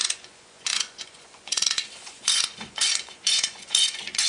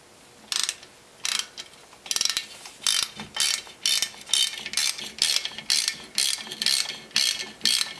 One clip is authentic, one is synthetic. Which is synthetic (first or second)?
first